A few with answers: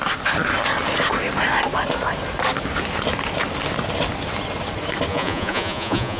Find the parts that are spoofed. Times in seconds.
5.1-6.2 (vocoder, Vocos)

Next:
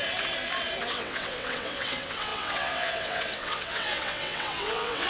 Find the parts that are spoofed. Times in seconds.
0.8-5.1 (vocoder, WaveNeXt)

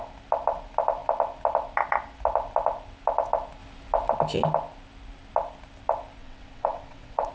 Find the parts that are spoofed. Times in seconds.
6.2-7.3 (vocoder, WaveNeXt)

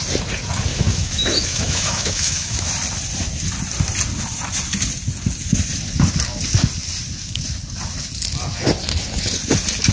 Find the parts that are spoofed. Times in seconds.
0.7-2.7 (autoencoder, DAC-VAE)

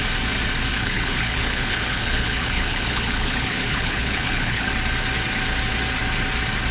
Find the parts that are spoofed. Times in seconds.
0.7-4.7 (codec, HILCodec)

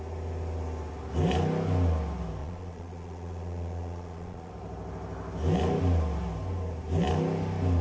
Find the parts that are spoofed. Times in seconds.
2.4-4.5 (vocoder, Vocos)

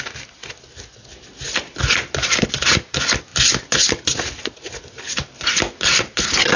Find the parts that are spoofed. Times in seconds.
none